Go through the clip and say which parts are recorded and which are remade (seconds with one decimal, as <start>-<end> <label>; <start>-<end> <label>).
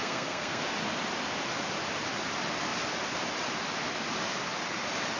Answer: 0.0-0.6 remade; 0.6-5.2 recorded